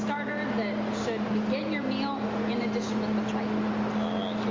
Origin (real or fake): real